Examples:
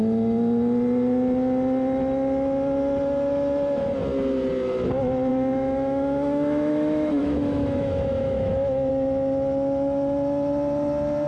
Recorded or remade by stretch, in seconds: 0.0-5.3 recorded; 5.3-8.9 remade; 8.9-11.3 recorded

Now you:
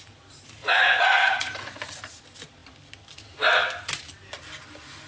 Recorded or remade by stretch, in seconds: 0.0-0.6 recorded; 0.6-2.2 remade; 2.2-5.1 recorded

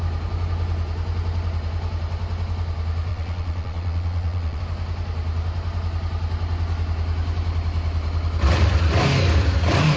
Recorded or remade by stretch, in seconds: 0.0-3.1 recorded; 3.1-4.6 remade; 4.6-10.0 recorded